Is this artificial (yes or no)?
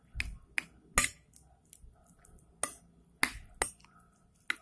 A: no